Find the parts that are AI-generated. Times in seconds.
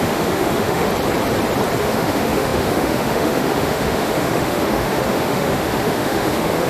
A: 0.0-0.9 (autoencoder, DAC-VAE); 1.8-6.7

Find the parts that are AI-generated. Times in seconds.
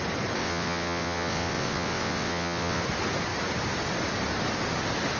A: 0.4-2.8 (vocoder, WaveNeXt)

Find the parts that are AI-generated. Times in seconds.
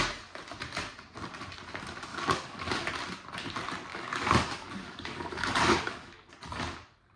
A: 2.1-2.9 (codec, DAC); 3.9-6.3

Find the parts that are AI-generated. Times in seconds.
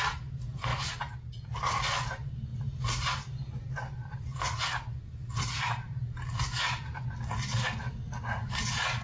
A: none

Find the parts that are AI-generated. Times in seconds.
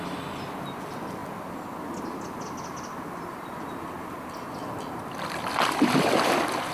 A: none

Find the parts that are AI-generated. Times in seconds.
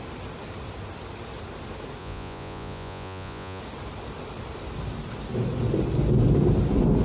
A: 2.0-3.6 (vocoder, Vocos)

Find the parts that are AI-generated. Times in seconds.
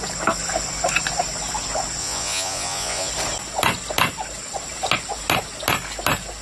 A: 2.0-3.1 (vocoder, Vocos)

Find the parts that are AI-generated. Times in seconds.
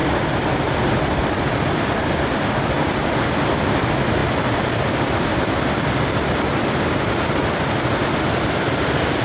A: none